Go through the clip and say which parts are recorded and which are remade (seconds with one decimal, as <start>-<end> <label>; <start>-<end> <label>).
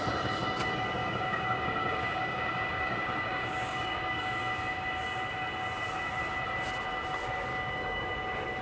0.0-1.0 recorded; 1.0-4.4 remade; 4.4-7.5 recorded; 7.5-8.1 remade; 8.1-8.6 recorded